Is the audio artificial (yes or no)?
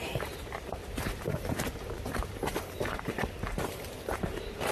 yes